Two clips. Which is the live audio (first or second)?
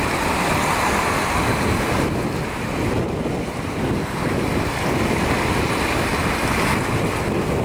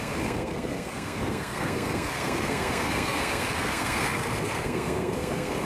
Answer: first